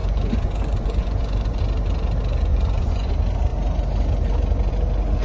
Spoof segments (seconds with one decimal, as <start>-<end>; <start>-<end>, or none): 0.0-1.6; 2.5-3.1